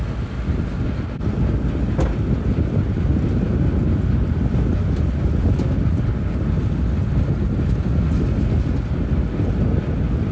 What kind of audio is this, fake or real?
real